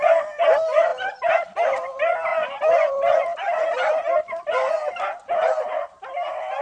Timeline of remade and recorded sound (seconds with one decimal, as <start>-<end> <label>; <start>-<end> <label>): 0.0-0.9 remade; 0.9-1.7 recorded; 1.7-2.3 remade; 2.3-2.9 recorded; 2.9-3.3 remade; 3.3-4.5 recorded; 4.5-6.6 remade

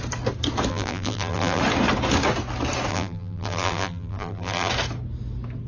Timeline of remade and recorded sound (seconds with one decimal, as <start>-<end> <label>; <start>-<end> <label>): 0.0-0.7 recorded; 0.7-1.6 remade; 1.6-2.9 recorded; 2.9-4.7 remade; 4.7-5.7 recorded

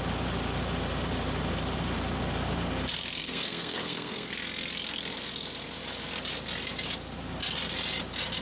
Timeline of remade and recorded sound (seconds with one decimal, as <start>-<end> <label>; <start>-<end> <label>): 0.0-3.2 recorded; 3.2-4.3 remade; 4.3-8.4 recorded

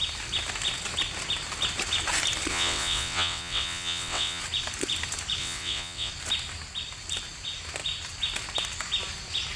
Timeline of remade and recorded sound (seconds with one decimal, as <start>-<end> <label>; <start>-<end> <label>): 0.0-2.5 recorded; 2.5-4.4 remade; 4.4-5.4 recorded; 5.4-6.1 remade; 6.1-9.6 recorded